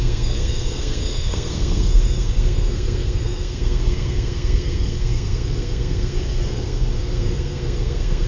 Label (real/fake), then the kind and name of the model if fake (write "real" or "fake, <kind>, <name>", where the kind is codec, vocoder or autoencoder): fake, codec, SNAC